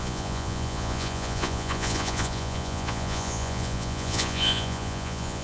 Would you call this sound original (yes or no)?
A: no